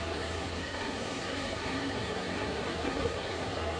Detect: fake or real fake